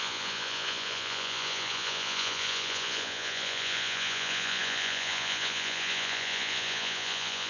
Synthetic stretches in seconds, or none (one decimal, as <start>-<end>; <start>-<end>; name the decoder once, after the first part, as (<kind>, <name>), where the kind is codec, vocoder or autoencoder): 0.0-7.5 (vocoder, Vocos)